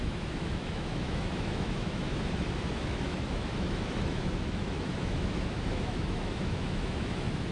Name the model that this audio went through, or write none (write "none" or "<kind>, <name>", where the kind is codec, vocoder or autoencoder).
autoencoder, DAC-VAE